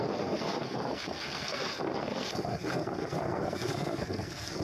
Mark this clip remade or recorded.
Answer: remade